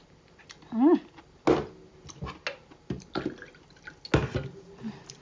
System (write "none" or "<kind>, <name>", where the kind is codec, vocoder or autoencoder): none